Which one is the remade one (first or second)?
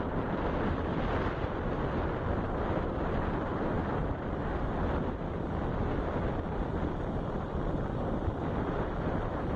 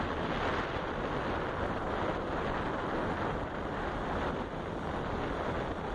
first